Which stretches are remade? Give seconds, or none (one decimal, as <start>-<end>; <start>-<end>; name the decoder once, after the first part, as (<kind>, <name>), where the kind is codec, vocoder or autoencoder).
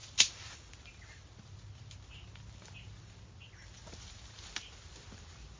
none